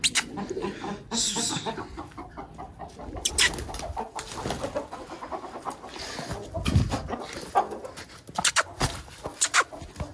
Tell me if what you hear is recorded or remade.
recorded